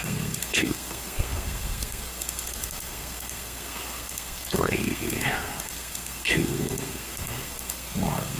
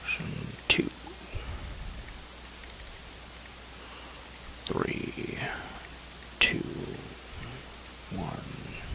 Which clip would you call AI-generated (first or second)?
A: first